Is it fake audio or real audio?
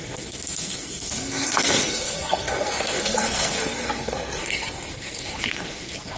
fake